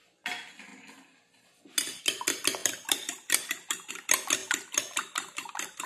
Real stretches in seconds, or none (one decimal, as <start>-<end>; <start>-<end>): 0.0-2.6; 3.9-4.4